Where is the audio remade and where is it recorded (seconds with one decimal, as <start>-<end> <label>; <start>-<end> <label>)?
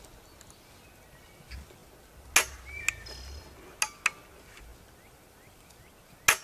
0.0-6.4 recorded